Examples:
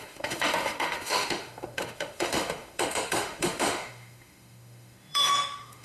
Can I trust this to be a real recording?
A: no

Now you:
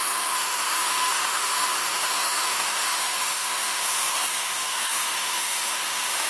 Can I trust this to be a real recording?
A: no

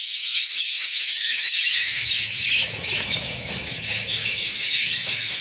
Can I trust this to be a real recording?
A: no